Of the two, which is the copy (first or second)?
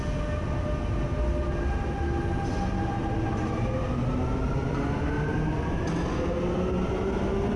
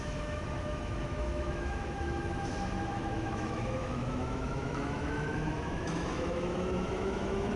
second